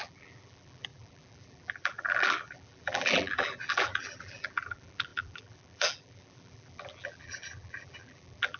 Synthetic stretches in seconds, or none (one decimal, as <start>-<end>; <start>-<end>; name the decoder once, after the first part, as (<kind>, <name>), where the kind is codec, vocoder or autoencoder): 0.0-8.6 (vocoder, BigVGAN v2)